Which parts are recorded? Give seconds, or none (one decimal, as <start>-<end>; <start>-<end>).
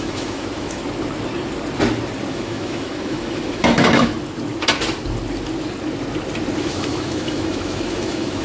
0.8-2.3; 4.1-6.6